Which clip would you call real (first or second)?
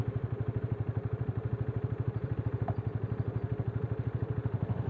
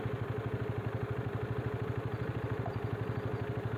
second